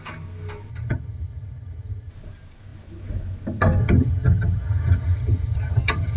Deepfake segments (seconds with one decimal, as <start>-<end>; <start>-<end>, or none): 0.7-2.1; 3.8-6.2